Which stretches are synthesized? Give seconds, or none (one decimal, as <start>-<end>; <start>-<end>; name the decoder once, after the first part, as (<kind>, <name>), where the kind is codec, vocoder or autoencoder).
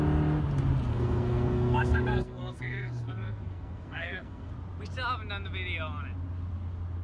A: 0.9-4.5 (codec, SNAC)